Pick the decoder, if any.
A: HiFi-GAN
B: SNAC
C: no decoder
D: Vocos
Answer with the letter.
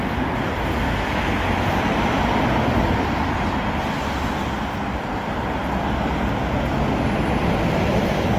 C